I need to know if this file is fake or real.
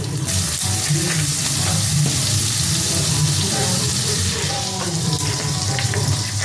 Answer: fake